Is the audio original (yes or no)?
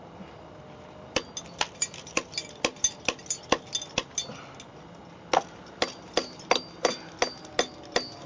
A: yes